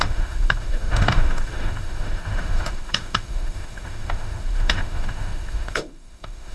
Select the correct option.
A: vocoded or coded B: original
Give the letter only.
A